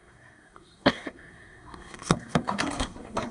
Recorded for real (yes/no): no